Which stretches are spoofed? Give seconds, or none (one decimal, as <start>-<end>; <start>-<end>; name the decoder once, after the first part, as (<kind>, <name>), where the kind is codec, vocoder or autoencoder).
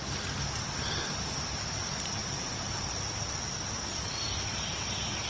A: none